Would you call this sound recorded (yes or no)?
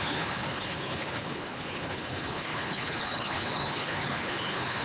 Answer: no